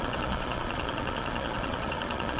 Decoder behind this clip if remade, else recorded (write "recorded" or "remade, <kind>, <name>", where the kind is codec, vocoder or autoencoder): remade, vocoder, Vocos